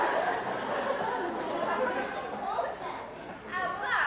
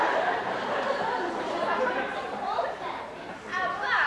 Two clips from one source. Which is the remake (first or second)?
second